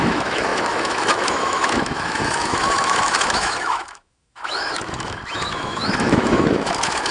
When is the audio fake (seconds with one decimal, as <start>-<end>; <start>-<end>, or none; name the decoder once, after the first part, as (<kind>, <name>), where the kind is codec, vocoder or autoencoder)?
0.0-7.1 (autoencoder, DAC-VAE)